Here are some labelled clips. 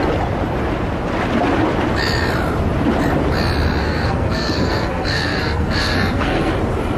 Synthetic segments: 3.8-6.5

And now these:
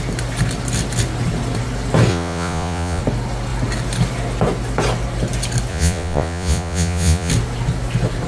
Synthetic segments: 2.1-3.0; 5.7-7.3